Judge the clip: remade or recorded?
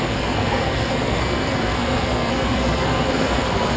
remade